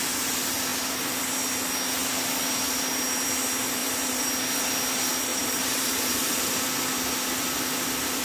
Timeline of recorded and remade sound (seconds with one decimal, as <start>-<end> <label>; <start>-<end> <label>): 0.0-3.8 recorded; 3.8-4.3 remade; 4.3-5.3 recorded; 5.3-6.5 remade; 6.5-8.2 recorded